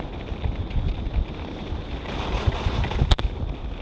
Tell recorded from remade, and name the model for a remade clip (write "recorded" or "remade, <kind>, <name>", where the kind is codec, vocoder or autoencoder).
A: recorded